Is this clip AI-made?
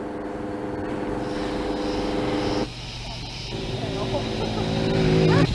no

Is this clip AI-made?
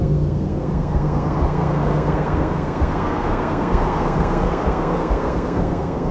yes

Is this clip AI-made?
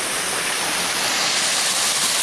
no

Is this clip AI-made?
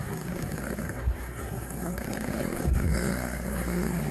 yes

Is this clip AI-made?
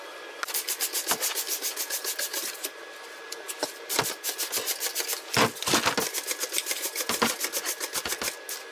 no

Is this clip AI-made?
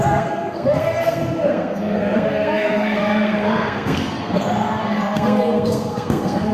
yes